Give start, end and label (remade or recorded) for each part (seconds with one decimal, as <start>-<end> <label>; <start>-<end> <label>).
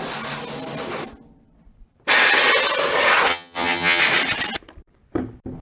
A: 0.0-3.3 recorded; 3.3-4.0 remade; 4.0-5.6 recorded